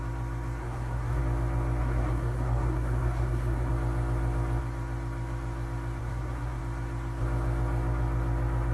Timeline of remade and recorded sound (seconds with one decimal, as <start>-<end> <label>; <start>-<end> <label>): 0.0-0.6 recorded; 0.6-1.2 remade; 1.2-1.8 recorded; 1.8-3.7 remade; 3.7-6.0 recorded; 6.0-6.6 remade; 6.6-8.7 recorded